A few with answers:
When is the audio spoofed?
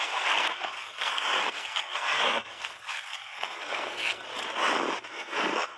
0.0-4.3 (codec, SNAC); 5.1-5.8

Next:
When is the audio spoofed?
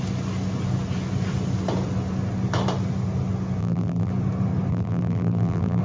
3.6-4.1 (vocoder, BigVGAN v2); 4.7-5.8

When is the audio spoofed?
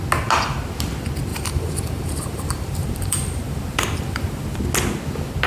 1.3-4.6 (vocoder, BigVGAN v2)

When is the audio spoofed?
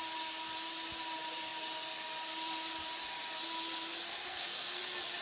4.2-4.8 (codec, SNAC)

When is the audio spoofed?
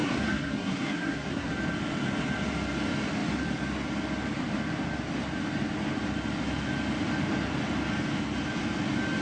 0.0-1.5 (codec, SNAC)